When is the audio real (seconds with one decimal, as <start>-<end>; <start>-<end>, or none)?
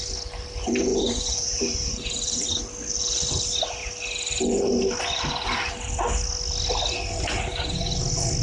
0.0-0.9; 2.6-8.4